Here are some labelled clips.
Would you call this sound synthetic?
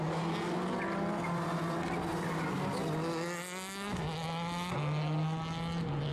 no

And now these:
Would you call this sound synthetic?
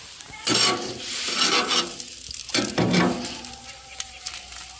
no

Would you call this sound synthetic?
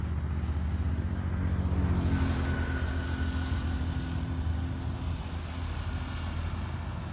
no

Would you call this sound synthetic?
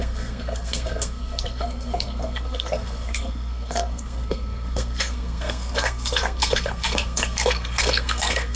yes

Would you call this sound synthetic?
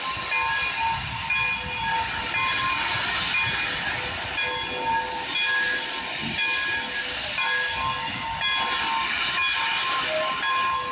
no